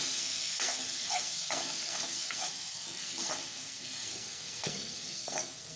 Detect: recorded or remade remade